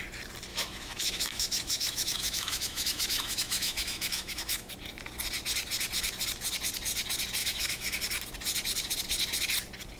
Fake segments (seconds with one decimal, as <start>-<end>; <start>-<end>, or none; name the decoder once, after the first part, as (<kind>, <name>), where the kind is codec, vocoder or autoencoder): 0.5-4.7 (autoencoder, DAC-VAE); 7.4-8.0